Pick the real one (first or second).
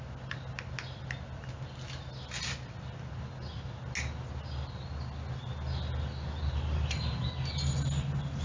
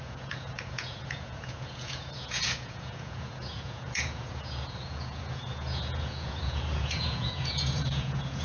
first